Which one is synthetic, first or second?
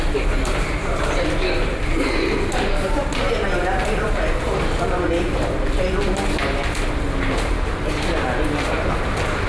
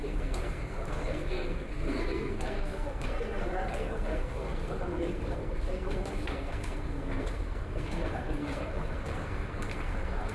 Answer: second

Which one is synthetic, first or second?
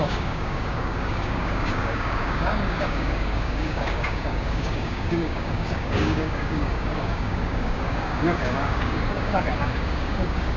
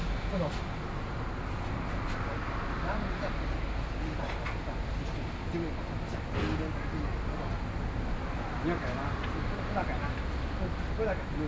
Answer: first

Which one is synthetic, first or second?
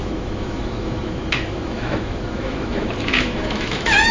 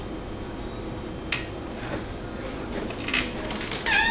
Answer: first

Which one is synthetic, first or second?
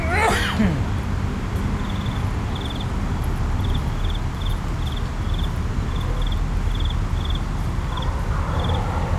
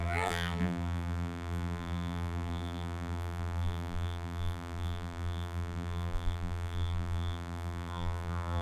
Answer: second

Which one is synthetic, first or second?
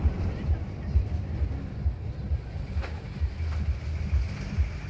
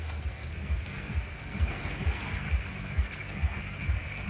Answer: second